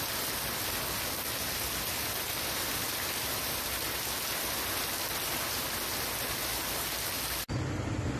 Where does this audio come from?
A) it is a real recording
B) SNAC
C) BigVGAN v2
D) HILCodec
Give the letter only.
A